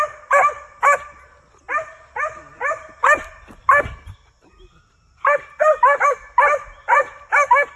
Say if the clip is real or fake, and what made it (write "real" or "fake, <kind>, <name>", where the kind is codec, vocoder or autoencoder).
real